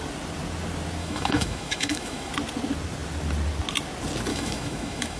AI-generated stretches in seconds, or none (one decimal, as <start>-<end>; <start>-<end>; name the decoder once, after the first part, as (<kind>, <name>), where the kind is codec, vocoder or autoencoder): 1.0-2.3 (autoencoder, DAC-VAE); 4.3-5.2